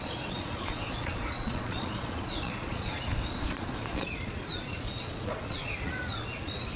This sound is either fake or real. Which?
fake